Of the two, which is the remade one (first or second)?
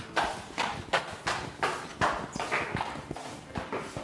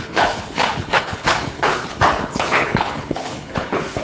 second